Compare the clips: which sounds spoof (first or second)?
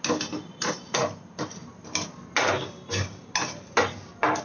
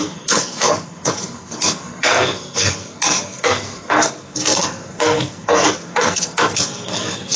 second